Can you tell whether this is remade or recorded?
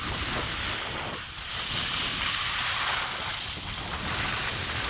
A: recorded